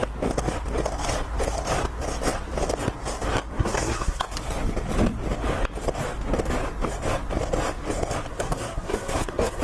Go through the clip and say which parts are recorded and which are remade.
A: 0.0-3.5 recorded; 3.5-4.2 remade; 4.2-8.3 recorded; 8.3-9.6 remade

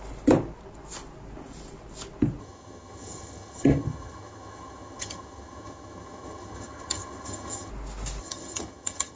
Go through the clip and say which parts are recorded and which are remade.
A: 0.0-2.4 recorded; 2.4-7.7 remade; 7.7-8.2 recorded; 8.2-9.2 remade

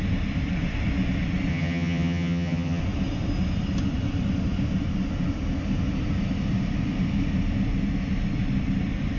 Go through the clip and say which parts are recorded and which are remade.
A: 0.0-1.5 recorded; 1.5-2.8 remade; 2.8-9.2 recorded

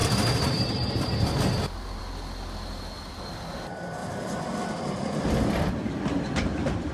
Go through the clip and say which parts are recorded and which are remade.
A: 0.0-2.0 remade; 2.0-4.0 recorded; 4.0-5.5 remade; 5.5-6.9 recorded

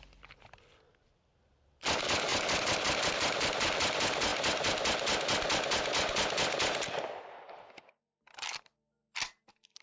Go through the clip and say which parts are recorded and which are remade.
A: 0.0-9.8 recorded